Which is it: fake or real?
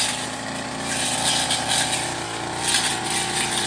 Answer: real